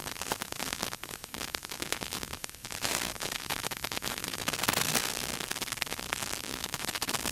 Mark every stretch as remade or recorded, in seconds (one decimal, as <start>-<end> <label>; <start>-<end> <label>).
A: 0.0-7.3 remade